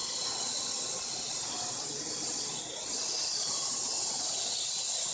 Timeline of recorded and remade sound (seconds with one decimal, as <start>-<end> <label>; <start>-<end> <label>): 0.0-5.1 recorded